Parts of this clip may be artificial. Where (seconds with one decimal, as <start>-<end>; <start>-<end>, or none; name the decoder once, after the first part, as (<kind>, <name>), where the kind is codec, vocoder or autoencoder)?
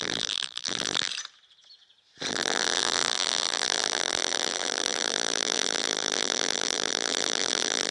0.0-1.1 (vocoder, BigVGAN v2); 2.3-7.9